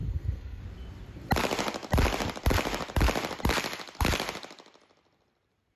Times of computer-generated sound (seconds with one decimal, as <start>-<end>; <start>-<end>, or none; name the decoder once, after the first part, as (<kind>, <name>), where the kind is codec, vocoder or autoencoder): 0.0-0.6 (codec, SNAC)